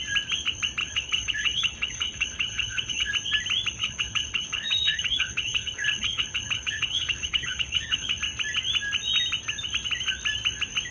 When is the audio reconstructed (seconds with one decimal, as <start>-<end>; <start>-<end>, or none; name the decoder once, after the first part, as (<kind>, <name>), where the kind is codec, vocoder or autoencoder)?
0.8-3.1 (codec, HILCodec); 3.8-8.2